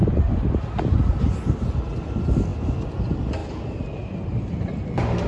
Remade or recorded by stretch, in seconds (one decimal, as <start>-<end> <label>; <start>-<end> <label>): 0.0-0.7 remade; 0.7-5.3 recorded